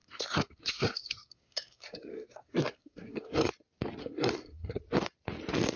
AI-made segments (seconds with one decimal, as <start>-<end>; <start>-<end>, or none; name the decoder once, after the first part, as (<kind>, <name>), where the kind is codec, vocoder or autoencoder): 0.0-3.5 (codec, SNAC); 4.0-4.8